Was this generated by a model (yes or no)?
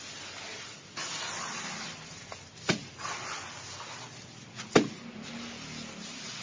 no